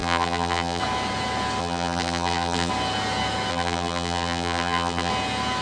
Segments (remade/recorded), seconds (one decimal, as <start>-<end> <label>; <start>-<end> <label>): 0.0-0.8 remade; 0.8-1.6 recorded; 1.6-2.7 remade; 2.7-3.5 recorded; 3.5-5.1 remade; 5.1-5.6 recorded